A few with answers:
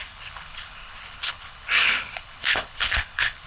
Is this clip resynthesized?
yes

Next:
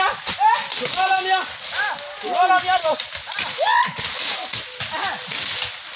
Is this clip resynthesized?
no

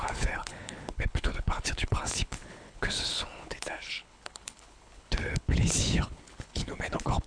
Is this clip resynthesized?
yes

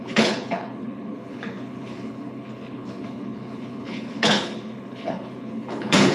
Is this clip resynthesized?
yes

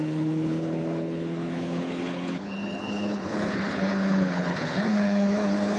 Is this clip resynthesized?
yes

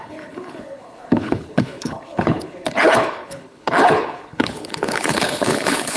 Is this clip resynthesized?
yes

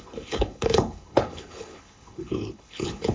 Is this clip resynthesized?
yes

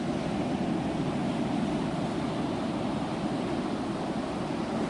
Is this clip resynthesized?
no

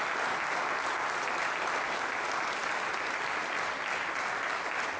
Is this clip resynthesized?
no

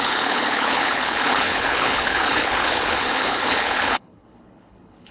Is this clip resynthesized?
yes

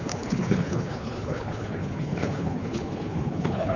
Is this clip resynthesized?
yes